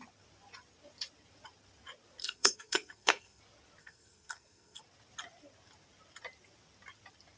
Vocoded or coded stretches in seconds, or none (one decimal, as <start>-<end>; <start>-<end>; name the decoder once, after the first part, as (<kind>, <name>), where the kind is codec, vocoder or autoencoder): 2.2-3.4 (codec, SNAC); 3.8-4.8

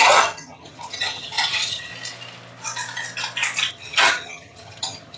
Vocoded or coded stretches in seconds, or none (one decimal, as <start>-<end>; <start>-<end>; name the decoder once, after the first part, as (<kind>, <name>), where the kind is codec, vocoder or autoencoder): 0.0-1.9 (vocoder, HiFi-GAN); 3.7-5.2